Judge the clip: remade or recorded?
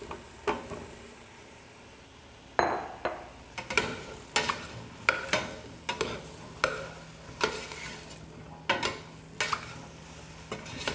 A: recorded